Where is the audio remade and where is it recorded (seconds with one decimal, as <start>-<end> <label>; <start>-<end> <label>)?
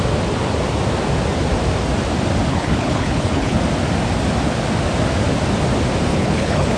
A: 0.0-2.5 recorded; 2.5-3.6 remade; 3.6-6.1 recorded; 6.1-6.8 remade